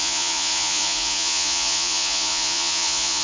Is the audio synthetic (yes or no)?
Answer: yes